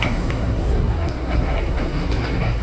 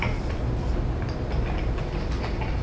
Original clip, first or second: second